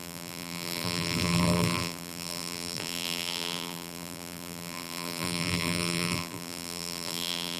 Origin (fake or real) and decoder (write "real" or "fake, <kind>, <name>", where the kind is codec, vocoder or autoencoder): fake, vocoder, BigVGAN v2